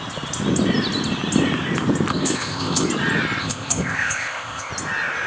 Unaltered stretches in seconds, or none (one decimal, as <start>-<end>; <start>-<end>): 0.0-2.1; 2.9-3.4; 4.7-5.3